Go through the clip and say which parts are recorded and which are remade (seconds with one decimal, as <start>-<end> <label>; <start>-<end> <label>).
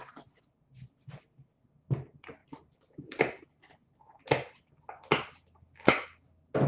0.0-2.4 recorded; 2.4-3.6 remade; 3.6-6.7 recorded